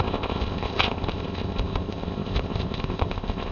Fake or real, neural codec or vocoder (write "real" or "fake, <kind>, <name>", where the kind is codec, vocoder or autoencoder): fake, codec, ZipCodec